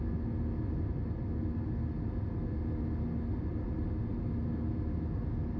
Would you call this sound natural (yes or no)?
yes